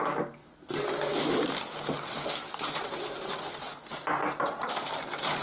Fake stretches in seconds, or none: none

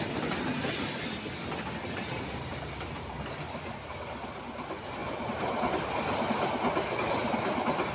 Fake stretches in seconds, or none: none

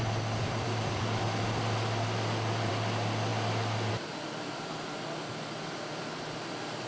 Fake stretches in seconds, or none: 0.0-2.7; 3.3-3.9

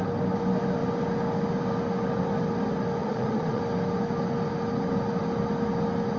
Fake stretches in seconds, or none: 3.0-3.6

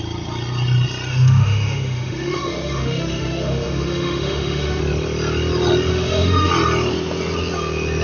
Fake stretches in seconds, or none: 1.1-4.8; 5.9-6.5

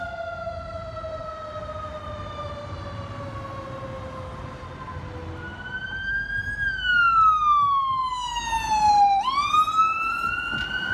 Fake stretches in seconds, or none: none

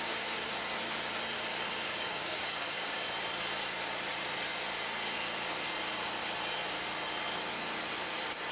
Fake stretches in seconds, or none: 1.9-3.1

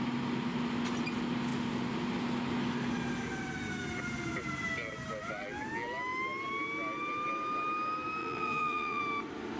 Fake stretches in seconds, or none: 8.2-9.0